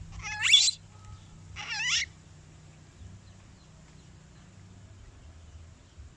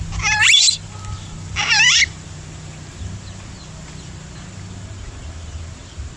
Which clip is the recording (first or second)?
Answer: first